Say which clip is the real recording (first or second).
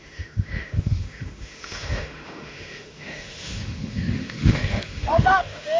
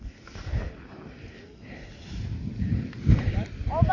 second